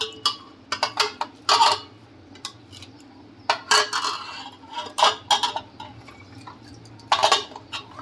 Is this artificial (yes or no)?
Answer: no